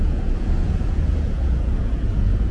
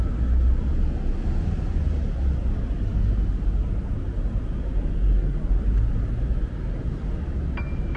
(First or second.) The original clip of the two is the second